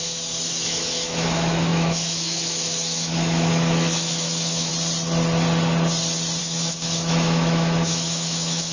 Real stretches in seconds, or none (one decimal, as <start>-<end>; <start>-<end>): 4.7-6.4